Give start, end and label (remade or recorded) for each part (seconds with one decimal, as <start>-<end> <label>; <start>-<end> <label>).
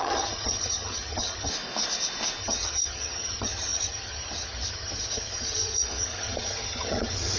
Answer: 0.0-1.5 remade; 1.5-2.4 recorded; 2.4-7.4 remade